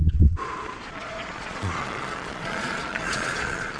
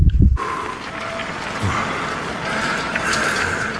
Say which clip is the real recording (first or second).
second